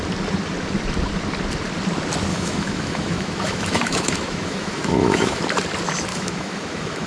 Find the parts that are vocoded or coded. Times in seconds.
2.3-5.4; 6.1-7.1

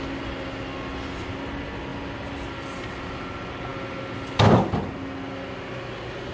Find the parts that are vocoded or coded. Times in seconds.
none

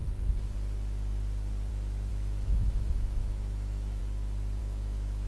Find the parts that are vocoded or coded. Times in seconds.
1.7-4.0; 4.6-5.3

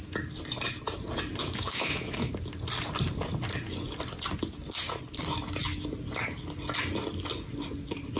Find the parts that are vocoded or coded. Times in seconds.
1.4-2.3

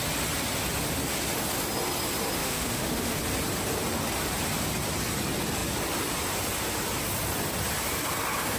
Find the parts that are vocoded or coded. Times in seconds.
2.4-3.2

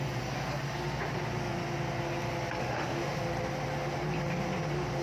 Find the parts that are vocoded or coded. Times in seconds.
2.6-3.2

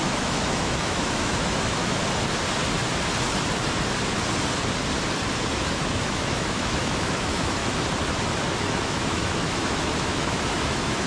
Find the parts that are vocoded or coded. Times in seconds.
0.0-2.0; 5.6-7.6; 8.6-11.1